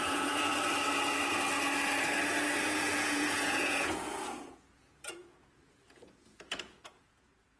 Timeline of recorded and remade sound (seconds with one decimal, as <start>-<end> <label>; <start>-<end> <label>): 0.0-0.5 remade; 0.5-2.6 recorded; 2.6-7.6 remade